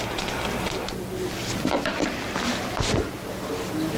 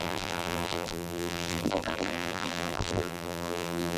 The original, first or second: first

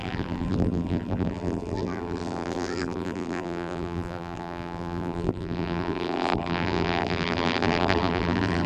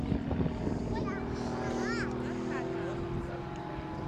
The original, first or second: second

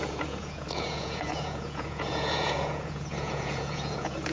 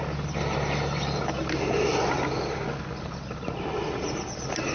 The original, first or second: second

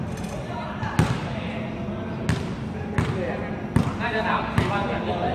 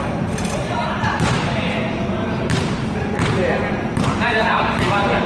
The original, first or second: first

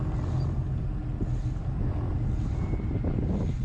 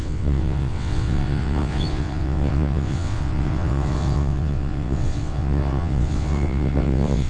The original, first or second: first